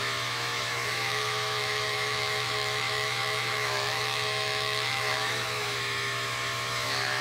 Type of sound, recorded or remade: remade